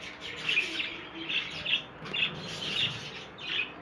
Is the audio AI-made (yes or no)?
no